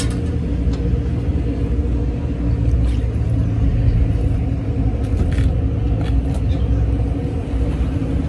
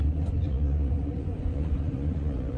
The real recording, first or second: first